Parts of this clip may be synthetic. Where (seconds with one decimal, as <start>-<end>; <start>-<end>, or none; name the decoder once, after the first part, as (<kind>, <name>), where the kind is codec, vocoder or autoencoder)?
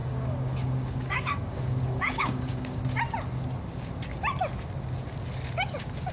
0.0-2.8 (codec, DAC)